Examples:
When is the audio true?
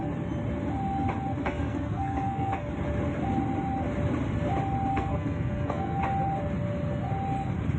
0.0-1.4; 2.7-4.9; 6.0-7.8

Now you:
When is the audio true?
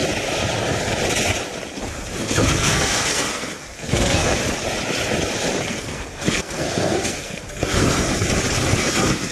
0.0-2.2; 4.4-5.6; 8.1-8.8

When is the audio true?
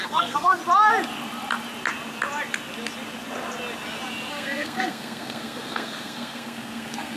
0.6-4.3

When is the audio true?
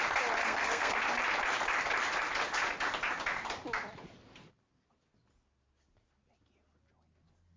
0.0-0.4; 1.0-7.6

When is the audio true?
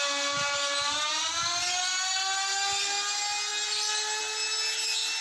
0.0-5.2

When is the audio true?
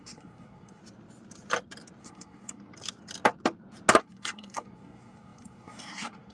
0.8-2.0; 2.7-4.0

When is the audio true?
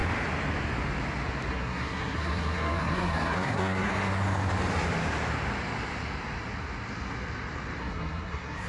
0.0-1.5; 3.9-7.8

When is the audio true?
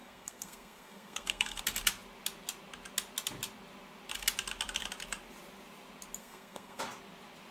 1.6-6.2; 6.8-7.5